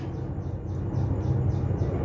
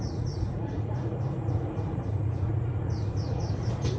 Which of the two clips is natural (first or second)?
first